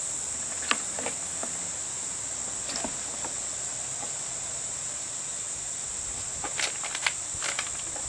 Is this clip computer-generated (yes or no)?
no